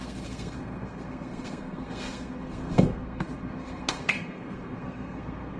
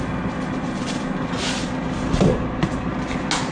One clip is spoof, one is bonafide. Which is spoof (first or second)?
first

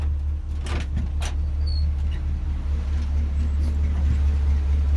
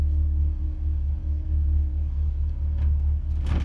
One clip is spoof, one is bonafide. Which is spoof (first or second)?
second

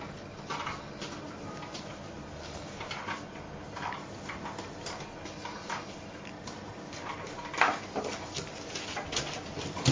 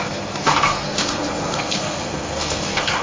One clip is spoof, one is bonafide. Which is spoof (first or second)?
second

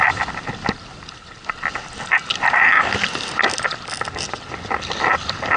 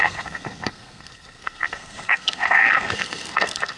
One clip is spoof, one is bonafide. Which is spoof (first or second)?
second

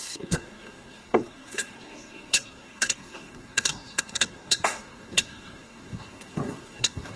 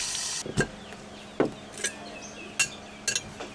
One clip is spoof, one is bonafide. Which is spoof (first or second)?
first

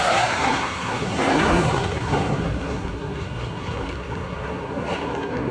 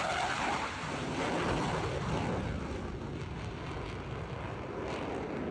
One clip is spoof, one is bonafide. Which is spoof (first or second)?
first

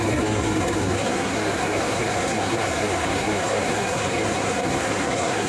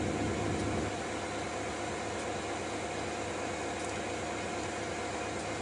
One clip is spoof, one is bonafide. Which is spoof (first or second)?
first